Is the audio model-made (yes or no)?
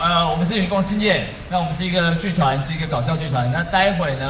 yes